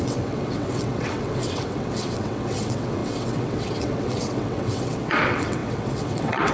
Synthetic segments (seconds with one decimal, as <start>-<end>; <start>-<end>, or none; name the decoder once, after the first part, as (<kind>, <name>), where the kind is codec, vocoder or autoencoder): 0.0-6.5 (vocoder, WaveNeXt)